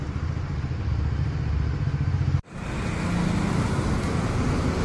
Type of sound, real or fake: real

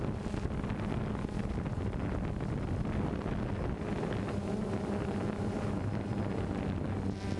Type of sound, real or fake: real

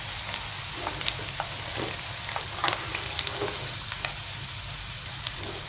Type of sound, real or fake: real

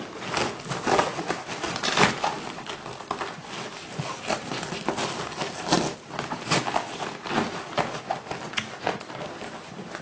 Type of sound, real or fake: real